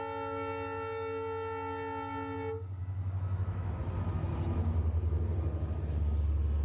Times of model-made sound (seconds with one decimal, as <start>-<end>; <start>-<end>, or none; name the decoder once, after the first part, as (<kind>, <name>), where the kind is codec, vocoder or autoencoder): 2.8-3.7 (autoencoder, DAC-VAE)